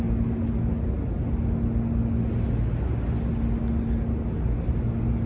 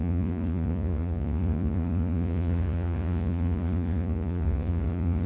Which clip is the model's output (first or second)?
second